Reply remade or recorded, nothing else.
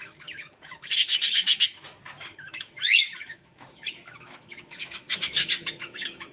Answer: remade